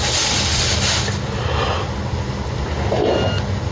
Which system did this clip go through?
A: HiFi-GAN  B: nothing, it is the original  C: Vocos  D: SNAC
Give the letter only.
B